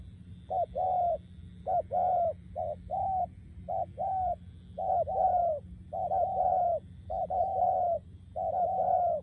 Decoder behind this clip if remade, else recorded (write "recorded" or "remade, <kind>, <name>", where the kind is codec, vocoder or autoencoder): recorded